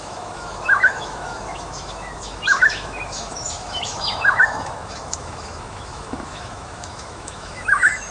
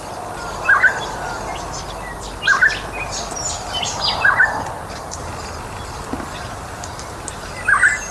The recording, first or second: second